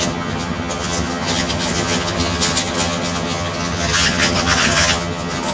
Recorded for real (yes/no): no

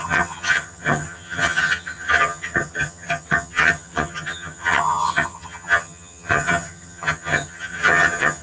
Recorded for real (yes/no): no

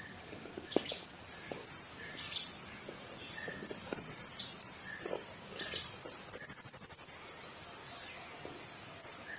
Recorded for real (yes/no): yes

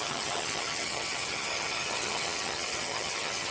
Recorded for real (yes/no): no